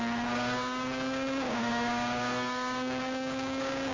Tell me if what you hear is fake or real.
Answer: fake